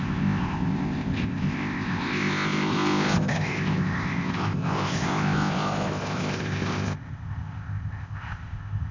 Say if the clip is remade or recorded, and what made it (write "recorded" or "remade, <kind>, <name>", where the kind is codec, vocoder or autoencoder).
remade, codec, ZipCodec